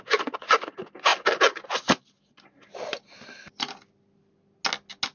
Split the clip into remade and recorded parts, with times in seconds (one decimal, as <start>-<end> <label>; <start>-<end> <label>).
0.0-5.1 recorded

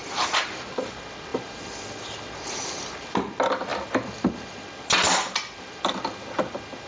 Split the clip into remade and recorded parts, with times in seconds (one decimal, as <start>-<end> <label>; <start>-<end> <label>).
0.0-0.6 remade; 0.6-6.9 recorded